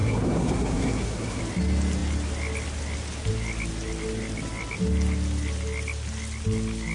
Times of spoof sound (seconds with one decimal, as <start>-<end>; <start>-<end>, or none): 0.0-1.4